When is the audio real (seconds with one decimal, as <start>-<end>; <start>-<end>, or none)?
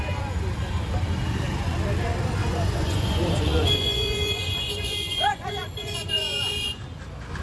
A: 0.0-2.4; 6.8-7.4